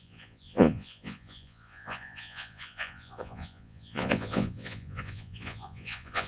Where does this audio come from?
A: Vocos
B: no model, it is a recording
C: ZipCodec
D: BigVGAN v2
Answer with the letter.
A